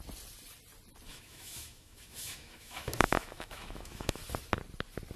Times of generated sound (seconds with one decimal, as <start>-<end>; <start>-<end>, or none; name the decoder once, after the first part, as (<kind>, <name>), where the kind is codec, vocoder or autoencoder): 1.1-4.2 (autoencoder, DAC-VAE)

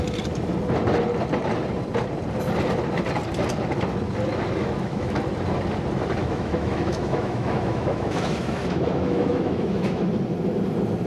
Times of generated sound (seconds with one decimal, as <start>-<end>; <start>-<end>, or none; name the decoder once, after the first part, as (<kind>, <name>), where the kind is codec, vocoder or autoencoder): 4.6-5.2 (autoencoder, DAC-VAE); 6.2-10.1

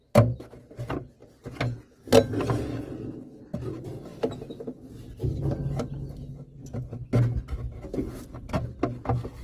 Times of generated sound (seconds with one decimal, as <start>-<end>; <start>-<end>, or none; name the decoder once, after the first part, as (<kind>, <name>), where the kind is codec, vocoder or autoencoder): none

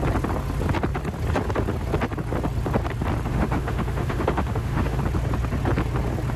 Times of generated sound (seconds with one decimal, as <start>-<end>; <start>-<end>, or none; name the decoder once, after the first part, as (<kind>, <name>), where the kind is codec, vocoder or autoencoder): 3.3-5.0 (autoencoder, DAC-VAE)

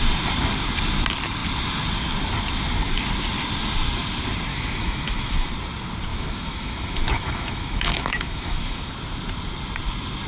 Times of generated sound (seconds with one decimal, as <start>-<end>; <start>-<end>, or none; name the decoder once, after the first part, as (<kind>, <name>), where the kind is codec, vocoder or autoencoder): 4.5-5.5 (autoencoder, DAC-VAE); 6.1-8.9

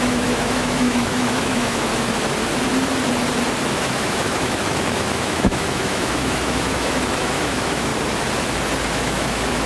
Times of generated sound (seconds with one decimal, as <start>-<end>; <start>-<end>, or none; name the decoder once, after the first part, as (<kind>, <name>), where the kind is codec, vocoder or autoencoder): 0.0-1.9 (autoencoder, DAC-VAE); 3.7-7.9; 8.9-9.7

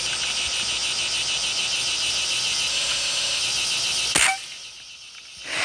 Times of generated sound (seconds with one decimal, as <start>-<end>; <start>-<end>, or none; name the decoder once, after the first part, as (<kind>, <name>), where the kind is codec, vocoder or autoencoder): 2.7-3.4 (autoencoder, DAC-VAE)

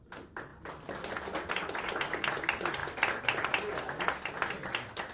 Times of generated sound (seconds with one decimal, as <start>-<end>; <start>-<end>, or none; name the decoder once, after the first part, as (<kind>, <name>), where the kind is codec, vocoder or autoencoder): none